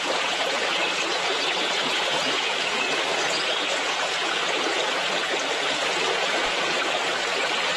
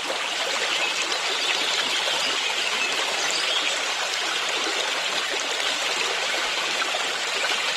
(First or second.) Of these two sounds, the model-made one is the first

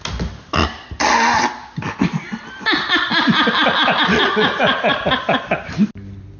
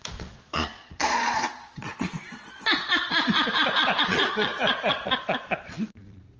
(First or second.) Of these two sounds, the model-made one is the second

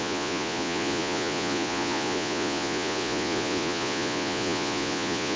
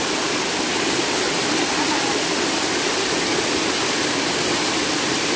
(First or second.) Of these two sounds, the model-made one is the first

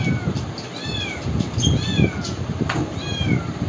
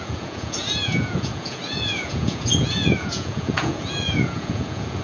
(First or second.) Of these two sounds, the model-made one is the second